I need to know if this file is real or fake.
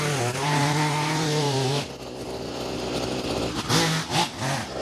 real